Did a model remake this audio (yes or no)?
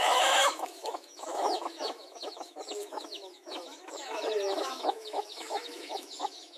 yes